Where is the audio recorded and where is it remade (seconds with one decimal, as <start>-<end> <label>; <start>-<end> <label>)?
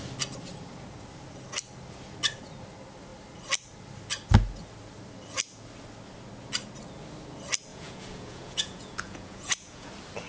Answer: 0.0-7.7 recorded; 7.7-9.9 remade; 9.9-10.3 recorded